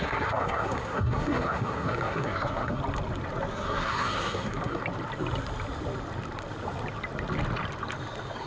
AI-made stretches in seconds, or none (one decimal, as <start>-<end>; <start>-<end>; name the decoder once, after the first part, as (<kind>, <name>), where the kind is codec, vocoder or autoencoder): 0.0-2.8 (codec, SNAC); 3.5-4.8